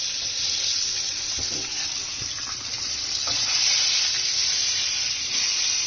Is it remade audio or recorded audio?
recorded